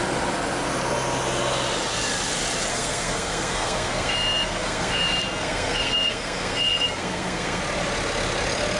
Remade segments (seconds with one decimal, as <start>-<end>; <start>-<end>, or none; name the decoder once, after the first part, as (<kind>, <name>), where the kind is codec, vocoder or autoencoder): 2.7-7.6 (codec, SNAC)